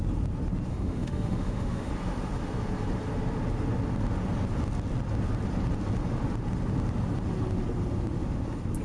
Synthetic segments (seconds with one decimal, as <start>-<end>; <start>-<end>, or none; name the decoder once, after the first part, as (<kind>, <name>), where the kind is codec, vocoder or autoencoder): 0.7-1.9 (autoencoder, DAC-VAE)